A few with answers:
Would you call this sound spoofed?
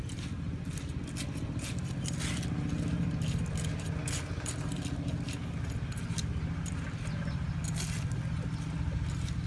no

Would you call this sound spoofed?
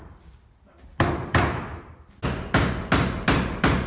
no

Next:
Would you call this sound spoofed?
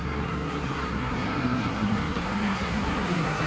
yes